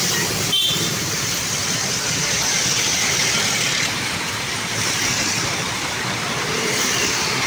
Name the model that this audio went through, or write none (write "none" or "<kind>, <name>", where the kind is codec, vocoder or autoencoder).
vocoder, BigVGAN v2